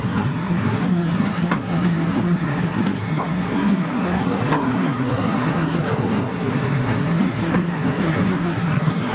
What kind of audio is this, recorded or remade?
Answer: remade